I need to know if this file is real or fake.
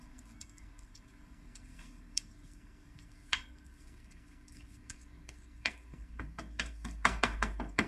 fake